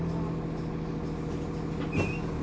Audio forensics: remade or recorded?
recorded